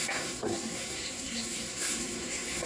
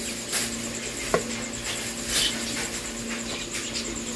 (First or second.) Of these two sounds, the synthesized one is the first